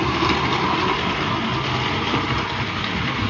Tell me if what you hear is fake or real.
real